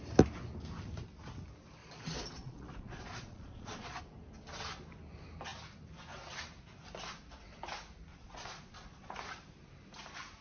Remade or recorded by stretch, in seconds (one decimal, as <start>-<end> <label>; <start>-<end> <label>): 0.0-1.8 recorded; 1.8-4.0 remade; 4.0-8.1 recorded; 8.1-9.2 remade; 9.2-10.4 recorded

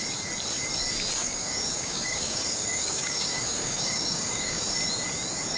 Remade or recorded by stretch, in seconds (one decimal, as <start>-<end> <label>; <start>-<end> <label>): 0.0-1.2 recorded; 1.2-4.6 remade; 4.6-5.6 recorded